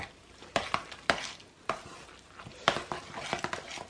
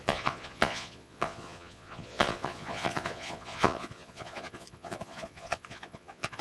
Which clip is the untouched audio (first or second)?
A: first